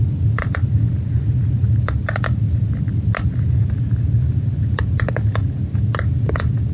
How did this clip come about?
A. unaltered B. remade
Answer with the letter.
A